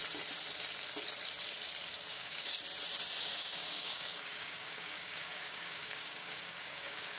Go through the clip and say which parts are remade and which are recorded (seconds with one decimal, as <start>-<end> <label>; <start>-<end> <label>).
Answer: 0.0-2.1 recorded; 2.1-2.5 remade; 2.5-3.2 recorded; 3.2-7.2 remade